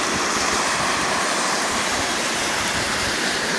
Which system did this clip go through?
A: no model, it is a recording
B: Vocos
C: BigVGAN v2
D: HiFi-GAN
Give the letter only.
C